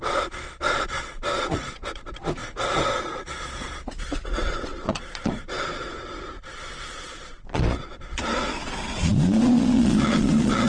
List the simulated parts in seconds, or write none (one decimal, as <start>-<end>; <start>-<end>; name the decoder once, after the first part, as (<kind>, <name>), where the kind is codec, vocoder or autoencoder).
0.0-2.4 (vocoder, Vocos); 3.0-10.7